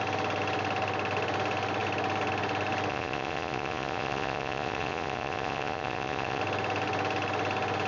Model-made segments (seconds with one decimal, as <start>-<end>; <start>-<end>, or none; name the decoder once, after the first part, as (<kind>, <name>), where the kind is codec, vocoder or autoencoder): 2.9-6.4 (vocoder, Vocos)

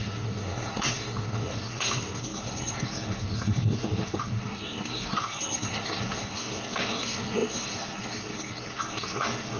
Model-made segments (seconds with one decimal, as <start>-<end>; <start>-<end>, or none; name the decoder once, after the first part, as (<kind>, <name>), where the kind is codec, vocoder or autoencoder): 0.0-9.6 (codec, SNAC)

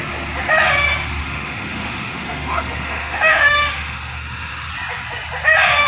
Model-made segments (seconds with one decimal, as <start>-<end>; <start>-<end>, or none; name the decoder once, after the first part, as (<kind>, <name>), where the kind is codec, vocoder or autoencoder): 1.2-4.7 (autoencoder, DAC-VAE)

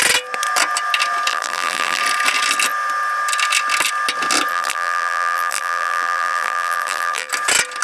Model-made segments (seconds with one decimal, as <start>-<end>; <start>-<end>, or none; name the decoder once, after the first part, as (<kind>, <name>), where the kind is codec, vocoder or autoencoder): 1.3-2.0 (vocoder, BigVGAN v2); 4.5-7.3

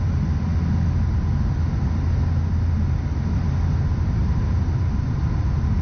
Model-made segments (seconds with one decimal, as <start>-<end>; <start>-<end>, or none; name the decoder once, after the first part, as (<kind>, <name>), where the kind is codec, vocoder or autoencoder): 4.2-5.2 (vocoder, BigVGAN v2)